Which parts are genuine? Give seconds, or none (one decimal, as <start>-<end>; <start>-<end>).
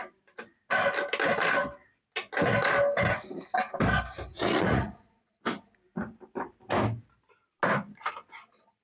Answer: 0.0-4.3; 5.4-8.8